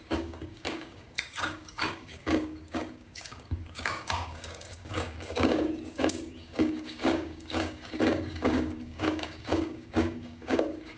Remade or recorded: remade